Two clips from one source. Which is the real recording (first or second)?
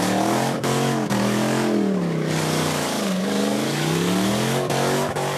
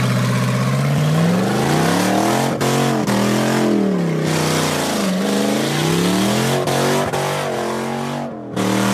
second